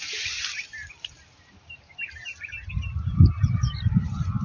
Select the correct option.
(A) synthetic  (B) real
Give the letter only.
A